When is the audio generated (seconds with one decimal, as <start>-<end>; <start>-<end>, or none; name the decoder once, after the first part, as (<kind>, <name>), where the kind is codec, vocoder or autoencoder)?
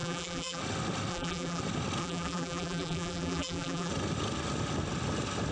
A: 0.0-0.6 (vocoder, BigVGAN v2); 1.1-1.6; 2.0-3.9